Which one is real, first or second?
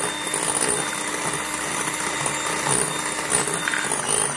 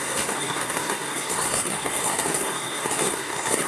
first